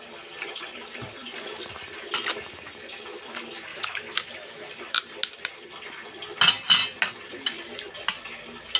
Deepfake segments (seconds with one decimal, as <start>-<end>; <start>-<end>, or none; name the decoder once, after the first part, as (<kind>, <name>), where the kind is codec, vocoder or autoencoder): 3.7-4.7 (autoencoder, DAC-VAE)